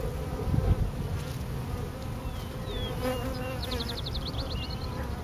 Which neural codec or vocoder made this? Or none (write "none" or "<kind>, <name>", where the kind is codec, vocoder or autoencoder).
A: none